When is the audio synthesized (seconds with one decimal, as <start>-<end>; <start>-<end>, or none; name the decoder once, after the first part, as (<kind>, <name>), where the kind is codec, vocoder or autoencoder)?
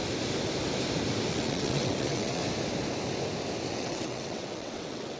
1.3-2.4 (vocoder, WaveNeXt); 3.7-5.2